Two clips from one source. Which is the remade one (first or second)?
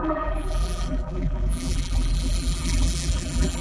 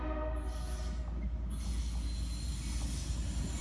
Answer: first